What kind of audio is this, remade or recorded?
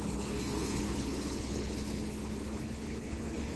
remade